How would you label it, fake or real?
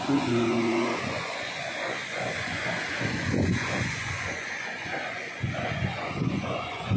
fake